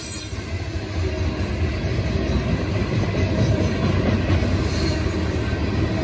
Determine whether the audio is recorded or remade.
recorded